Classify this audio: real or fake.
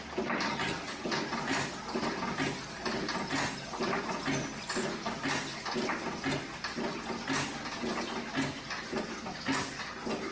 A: real